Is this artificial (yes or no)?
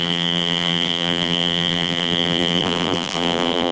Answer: yes